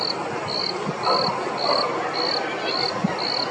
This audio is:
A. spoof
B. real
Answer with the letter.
B